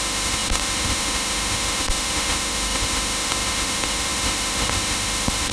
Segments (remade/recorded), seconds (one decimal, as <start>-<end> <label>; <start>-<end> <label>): 0.0-5.5 remade